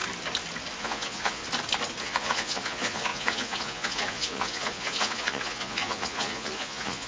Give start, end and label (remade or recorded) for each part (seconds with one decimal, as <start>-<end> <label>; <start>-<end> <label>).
0.0-0.8 recorded; 0.8-1.4 remade; 1.4-2.0 recorded; 2.0-7.1 remade